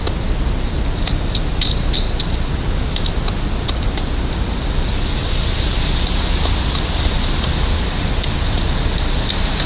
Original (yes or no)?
yes